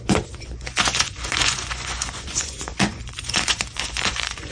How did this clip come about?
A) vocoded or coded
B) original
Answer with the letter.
A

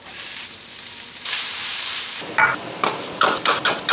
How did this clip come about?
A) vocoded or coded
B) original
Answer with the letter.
A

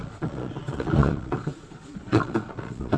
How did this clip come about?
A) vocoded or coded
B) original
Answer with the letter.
A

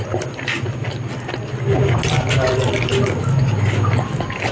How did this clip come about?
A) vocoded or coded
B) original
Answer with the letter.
B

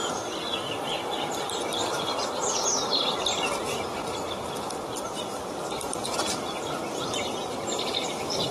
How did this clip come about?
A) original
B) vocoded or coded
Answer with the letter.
A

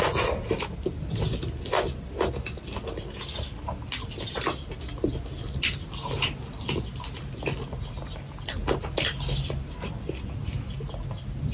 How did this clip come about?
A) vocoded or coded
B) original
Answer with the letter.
B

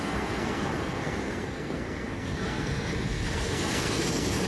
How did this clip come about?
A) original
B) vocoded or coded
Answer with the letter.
B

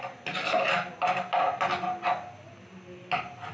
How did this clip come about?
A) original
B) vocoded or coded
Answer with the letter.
A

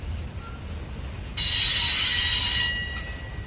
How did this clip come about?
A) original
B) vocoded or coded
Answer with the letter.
A